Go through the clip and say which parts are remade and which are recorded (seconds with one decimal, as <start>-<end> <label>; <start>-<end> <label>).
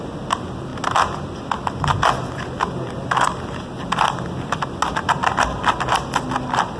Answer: 0.0-6.8 recorded